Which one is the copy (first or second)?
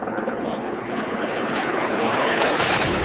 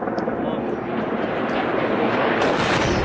first